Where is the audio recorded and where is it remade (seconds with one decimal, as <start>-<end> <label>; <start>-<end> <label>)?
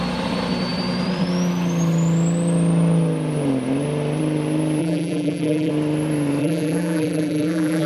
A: 0.0-4.8 recorded; 4.8-5.7 remade; 5.7-6.4 recorded; 6.4-7.9 remade